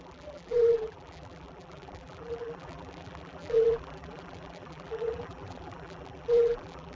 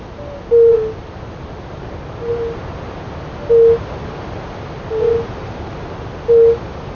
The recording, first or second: second